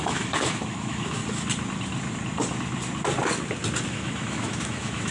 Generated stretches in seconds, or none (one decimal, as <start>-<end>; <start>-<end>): 0.0-1.2; 3.9-5.1